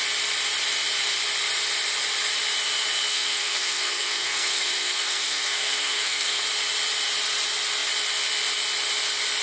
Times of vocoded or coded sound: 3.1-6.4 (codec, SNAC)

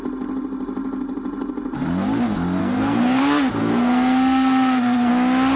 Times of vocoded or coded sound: 2.6-3.2 (codec, SNAC); 3.6-5.1

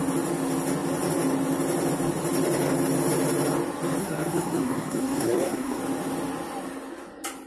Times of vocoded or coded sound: 4.0-5.8 (codec, SNAC)

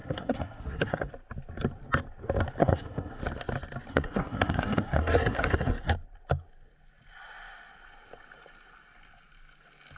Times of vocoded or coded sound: 0.0-1.1 (codec, SNAC); 2.6-3.2; 3.9-5.9